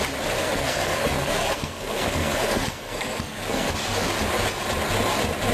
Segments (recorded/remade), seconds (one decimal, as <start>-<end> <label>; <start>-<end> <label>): 0.0-0.4 recorded; 0.4-3.7 remade; 3.7-5.5 recorded